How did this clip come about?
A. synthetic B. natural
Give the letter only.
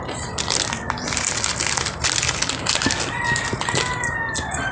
B